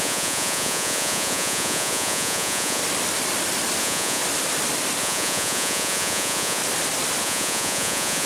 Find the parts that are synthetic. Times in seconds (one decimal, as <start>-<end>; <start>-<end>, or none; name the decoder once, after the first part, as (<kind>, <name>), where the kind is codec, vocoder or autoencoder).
0.0-2.8 (vocoder, Vocos); 3.8-4.2; 5.0-6.6; 7.2-8.3